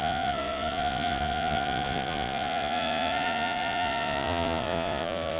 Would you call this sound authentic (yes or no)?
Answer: no